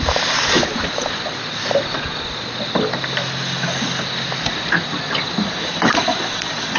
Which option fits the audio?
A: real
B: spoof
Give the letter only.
A